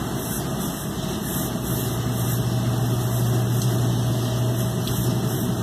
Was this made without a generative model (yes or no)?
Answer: yes